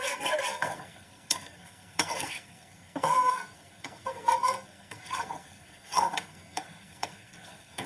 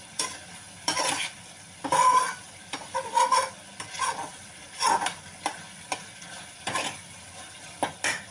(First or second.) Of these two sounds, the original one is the second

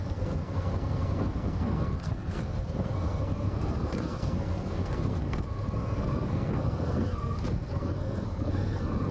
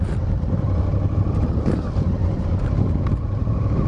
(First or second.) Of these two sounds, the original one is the second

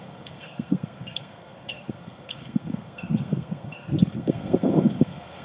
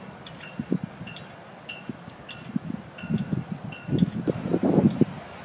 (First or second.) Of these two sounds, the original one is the second